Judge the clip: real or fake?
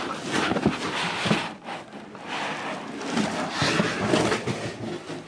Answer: real